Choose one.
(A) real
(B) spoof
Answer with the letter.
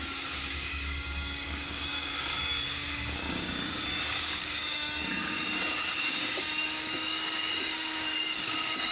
B